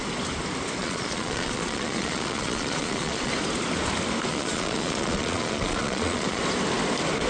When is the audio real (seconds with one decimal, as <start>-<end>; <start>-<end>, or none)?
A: 0.0-0.8; 3.3-4.3; 6.4-7.3